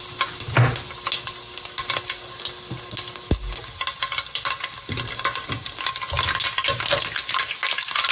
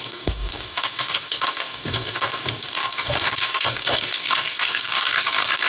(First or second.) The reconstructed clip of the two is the second